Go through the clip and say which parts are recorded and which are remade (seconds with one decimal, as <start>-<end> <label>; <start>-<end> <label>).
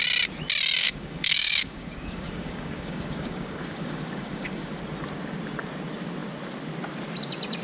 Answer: 0.0-0.8 recorded; 0.8-4.8 remade; 4.8-7.6 recorded